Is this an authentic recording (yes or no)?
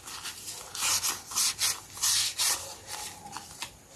yes